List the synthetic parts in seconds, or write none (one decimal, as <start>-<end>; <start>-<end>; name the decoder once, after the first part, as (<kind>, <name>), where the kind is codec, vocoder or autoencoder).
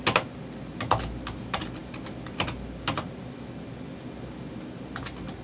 none